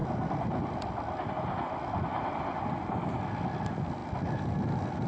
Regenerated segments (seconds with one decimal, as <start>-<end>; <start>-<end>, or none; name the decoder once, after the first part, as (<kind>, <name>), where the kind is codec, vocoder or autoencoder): 4.0-5.1 (vocoder, BigVGAN v2)